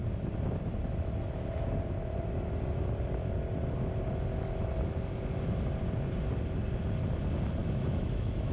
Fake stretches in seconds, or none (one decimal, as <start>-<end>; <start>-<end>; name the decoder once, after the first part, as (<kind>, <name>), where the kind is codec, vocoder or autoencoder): 7.6-8.5 (autoencoder, DAC-VAE)